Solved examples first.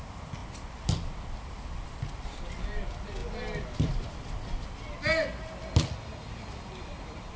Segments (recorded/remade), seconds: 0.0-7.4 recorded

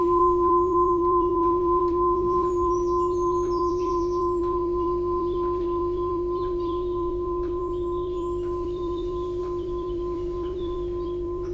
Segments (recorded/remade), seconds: 0.0-11.5 remade

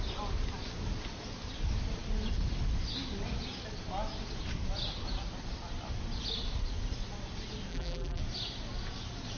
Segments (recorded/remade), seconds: 0.0-7.7 recorded; 7.7-8.2 remade; 8.2-9.4 recorded

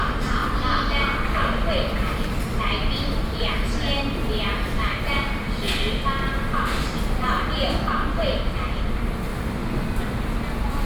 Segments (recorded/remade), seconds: 0.0-2.8 recorded; 2.8-3.5 remade; 3.5-9.3 recorded; 9.3-10.3 remade; 10.3-10.9 recorded

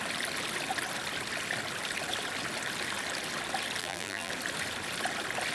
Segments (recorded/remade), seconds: 0.0-3.8 recorded; 3.8-4.3 remade; 4.3-5.5 recorded

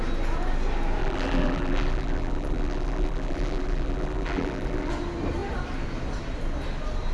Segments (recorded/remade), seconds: 0.0-1.0 recorded; 1.0-4.9 remade; 4.9-7.1 recorded

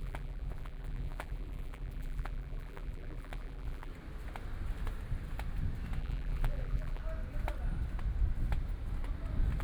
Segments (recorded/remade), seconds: 0.0-3.9 remade; 3.9-6.0 recorded; 6.0-7.0 remade; 7.0-9.6 recorded